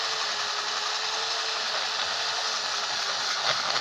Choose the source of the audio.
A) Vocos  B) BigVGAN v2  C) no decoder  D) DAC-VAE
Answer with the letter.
C